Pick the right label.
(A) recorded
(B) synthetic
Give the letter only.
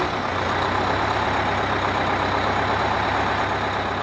A